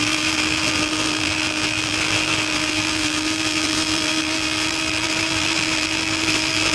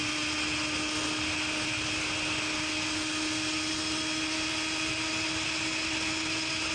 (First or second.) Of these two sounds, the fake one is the first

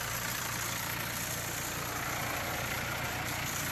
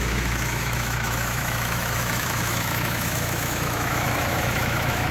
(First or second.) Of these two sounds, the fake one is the second